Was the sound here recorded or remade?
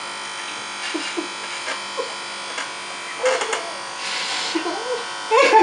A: recorded